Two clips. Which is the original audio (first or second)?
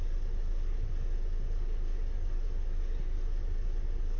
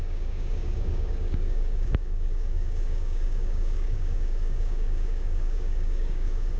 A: first